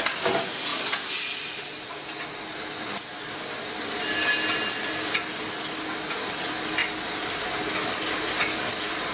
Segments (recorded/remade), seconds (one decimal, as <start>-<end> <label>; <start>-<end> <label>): 0.0-9.1 recorded